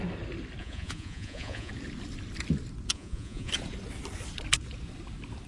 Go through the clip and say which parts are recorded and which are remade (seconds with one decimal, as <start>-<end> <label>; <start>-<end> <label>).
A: 0.0-0.6 recorded; 0.6-1.7 remade; 1.7-2.9 recorded; 2.9-3.5 remade; 3.5-5.5 recorded